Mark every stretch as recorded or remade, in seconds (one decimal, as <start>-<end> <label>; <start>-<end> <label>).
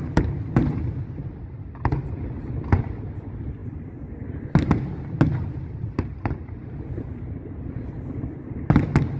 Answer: 0.0-9.2 recorded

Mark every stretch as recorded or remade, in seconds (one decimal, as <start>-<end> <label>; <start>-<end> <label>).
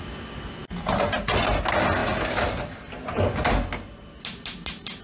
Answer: 0.0-5.0 recorded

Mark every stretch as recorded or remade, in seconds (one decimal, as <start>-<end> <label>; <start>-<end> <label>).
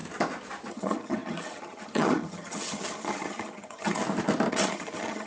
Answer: 0.0-0.7 recorded; 0.7-4.0 remade; 4.0-4.5 recorded; 4.5-5.3 remade